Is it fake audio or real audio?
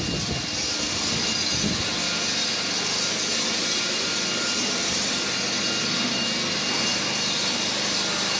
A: real